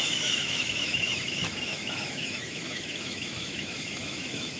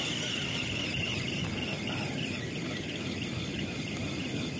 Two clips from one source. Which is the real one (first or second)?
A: second